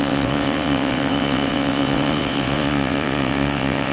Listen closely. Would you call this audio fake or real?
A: fake